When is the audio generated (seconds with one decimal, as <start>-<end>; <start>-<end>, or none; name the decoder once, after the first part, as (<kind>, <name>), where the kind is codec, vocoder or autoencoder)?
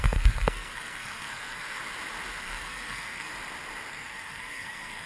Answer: 0.0-1.8 (codec, SNAC); 2.3-3.3; 3.9-5.1